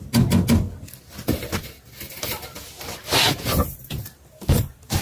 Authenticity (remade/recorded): recorded